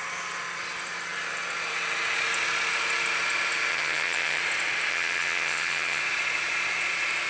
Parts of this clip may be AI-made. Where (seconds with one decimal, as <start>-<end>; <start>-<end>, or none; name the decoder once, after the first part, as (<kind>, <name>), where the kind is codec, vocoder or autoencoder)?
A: 3.7-4.4 (vocoder, HiFi-GAN); 4.9-6.0